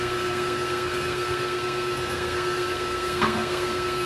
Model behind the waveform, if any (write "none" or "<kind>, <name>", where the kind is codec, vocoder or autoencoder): codec, SNAC